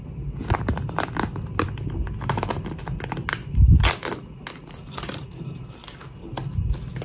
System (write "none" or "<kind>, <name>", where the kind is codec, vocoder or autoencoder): none